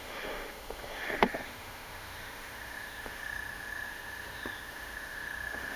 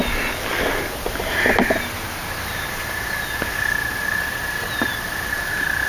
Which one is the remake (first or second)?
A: first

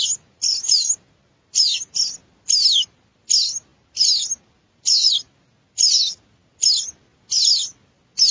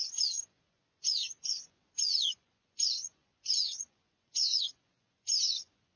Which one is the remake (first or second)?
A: second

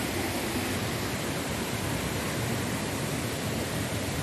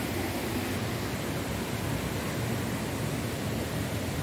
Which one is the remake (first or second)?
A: first